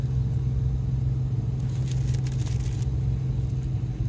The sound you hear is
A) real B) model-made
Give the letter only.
A